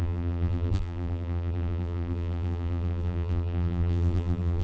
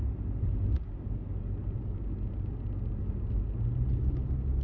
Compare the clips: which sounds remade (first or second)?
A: first